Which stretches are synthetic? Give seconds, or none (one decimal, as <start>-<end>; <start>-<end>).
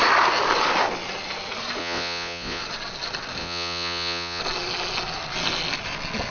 1.8-2.6; 3.4-4.4